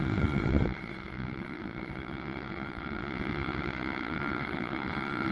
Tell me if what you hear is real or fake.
fake